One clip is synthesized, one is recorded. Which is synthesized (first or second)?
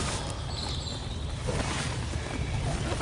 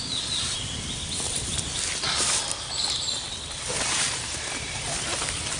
second